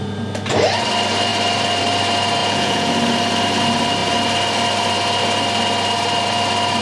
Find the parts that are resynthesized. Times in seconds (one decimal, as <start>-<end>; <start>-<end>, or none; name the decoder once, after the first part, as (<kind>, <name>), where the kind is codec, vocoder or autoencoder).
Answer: 2.4-2.9 (vocoder, Vocos)